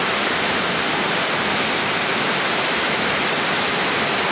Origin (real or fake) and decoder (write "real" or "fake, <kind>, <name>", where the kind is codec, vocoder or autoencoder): real